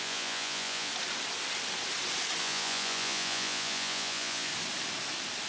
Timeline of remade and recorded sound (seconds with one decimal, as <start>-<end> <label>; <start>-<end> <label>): 0.0-0.9 remade; 0.9-2.4 recorded; 2.4-4.5 remade; 4.5-5.5 recorded